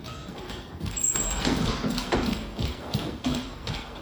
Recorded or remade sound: remade